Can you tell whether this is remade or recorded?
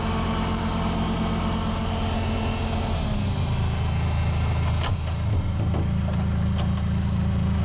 recorded